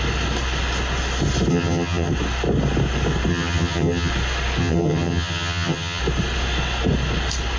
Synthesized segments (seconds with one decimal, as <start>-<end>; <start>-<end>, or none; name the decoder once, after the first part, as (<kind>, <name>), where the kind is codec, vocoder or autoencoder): 1.5-2.1 (vocoder, HiFi-GAN); 3.3-4.1; 4.6-6.0